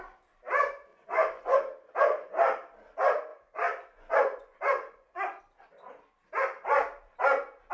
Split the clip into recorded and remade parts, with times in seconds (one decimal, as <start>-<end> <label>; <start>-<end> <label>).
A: 0.0-0.9 recorded; 0.9-1.6 remade; 1.6-3.3 recorded; 3.3-5.4 remade; 5.4-7.7 recorded